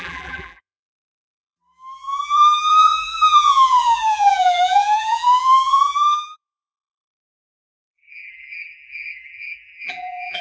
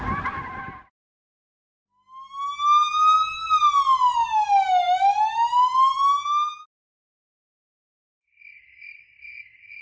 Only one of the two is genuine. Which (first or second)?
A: second